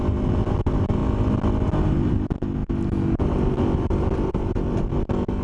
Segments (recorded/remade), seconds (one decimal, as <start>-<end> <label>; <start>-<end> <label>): 0.0-5.4 recorded